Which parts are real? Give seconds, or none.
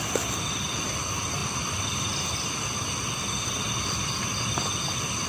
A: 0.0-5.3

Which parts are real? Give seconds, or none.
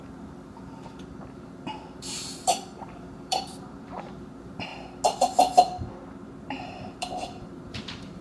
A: 4.7-6.4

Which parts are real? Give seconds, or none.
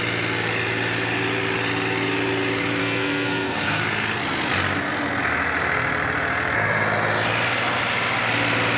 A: 0.0-2.8; 3.8-8.8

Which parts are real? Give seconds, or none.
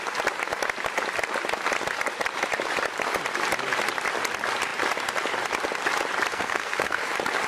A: 0.0-6.3; 7.1-7.5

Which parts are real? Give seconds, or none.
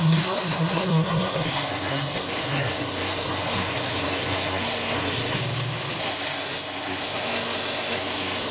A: 5.4-6.0